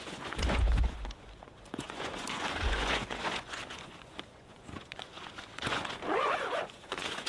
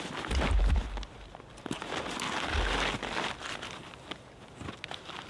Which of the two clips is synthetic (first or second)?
first